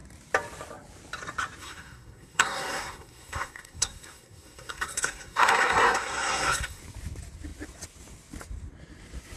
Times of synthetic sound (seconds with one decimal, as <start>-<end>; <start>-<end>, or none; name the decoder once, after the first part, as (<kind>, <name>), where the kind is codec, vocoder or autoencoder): 1.6-6.8 (codec, SNAC)